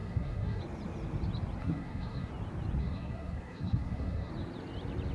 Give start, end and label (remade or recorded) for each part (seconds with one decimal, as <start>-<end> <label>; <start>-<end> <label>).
0.0-0.6 remade; 0.6-1.6 recorded; 1.6-2.3 remade; 2.3-2.8 recorded; 2.8-4.3 remade; 4.3-5.1 recorded